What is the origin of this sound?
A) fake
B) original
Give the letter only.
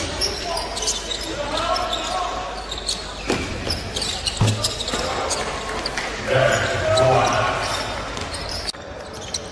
B